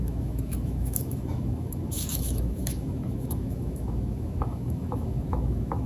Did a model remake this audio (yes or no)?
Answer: yes